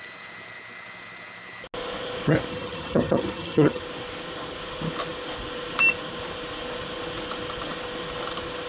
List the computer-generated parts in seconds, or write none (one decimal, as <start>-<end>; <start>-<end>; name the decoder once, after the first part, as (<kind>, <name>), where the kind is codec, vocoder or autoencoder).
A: 2.5-3.8 (vocoder, HiFi-GAN)